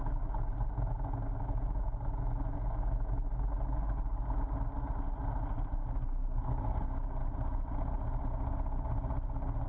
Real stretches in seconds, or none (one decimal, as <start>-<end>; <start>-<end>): 0.0-6.2; 7.2-9.7